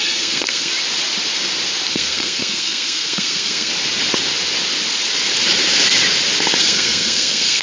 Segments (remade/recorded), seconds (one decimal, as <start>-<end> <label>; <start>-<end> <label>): 0.0-0.7 remade; 0.7-1.9 recorded; 1.9-3.7 remade; 3.7-6.6 recorded; 6.6-7.6 remade